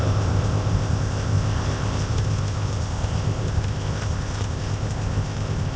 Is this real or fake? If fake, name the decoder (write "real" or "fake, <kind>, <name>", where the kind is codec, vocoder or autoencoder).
fake, codec, ZipCodec